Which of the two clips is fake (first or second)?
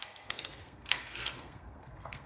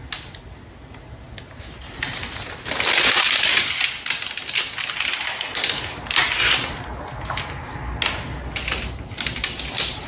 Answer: first